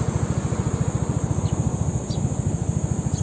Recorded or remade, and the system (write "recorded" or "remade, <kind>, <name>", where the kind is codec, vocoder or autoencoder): recorded